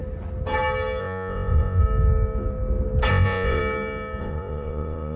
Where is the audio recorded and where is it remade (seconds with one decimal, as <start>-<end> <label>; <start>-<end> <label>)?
0.0-1.0 recorded; 1.0-1.8 remade; 1.8-3.1 recorded; 3.1-3.6 remade; 3.6-4.2 recorded; 4.2-5.2 remade